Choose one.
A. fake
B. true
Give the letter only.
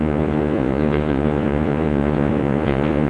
A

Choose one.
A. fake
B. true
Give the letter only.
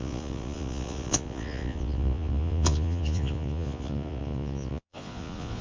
A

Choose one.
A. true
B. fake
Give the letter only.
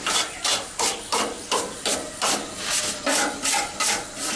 A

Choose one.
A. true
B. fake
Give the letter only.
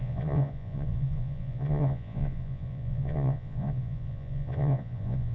B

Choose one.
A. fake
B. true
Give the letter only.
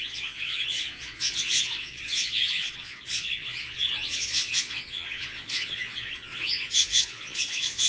A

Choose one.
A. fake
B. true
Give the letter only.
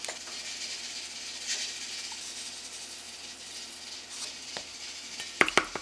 B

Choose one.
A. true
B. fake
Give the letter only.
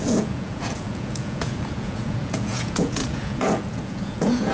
B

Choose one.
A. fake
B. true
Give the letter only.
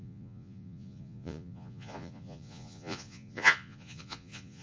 A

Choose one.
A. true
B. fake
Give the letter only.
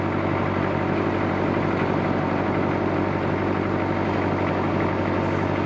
A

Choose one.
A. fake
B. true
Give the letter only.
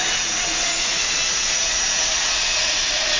A